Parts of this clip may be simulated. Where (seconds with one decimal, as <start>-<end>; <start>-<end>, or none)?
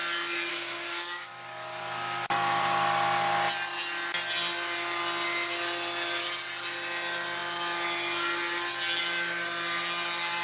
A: 0.5-1.3